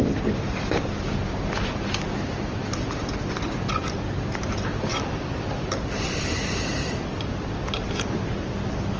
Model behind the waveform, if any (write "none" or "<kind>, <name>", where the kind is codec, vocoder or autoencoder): vocoder, BigVGAN v2